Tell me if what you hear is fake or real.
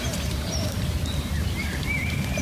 fake